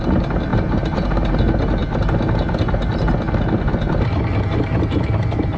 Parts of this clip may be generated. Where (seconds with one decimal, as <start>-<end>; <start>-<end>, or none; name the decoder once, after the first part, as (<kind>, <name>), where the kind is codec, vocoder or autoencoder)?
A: 0.5-1.3 (vocoder, BigVGAN v2)